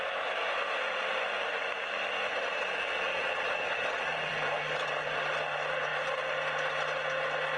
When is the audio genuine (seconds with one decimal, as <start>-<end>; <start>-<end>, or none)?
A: 0.0-3.2; 5.2-7.6